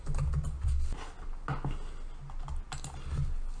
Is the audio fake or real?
real